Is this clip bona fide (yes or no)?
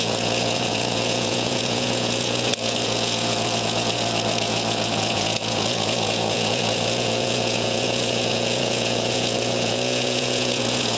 no